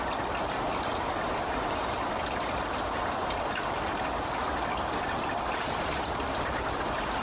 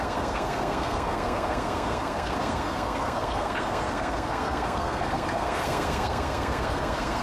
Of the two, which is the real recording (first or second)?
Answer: first